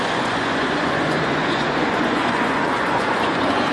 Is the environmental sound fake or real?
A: fake